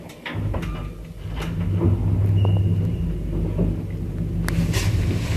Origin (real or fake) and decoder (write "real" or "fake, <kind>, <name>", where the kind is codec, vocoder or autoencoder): real